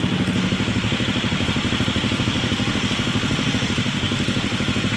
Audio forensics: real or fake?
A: real